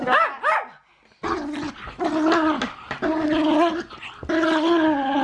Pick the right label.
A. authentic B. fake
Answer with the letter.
A